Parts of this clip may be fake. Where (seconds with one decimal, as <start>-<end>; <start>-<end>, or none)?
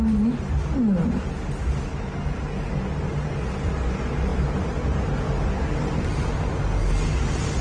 none